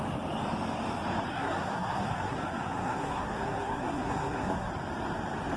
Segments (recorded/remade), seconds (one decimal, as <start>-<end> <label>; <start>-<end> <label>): 0.0-1.3 recorded; 1.3-4.7 remade; 4.7-5.6 recorded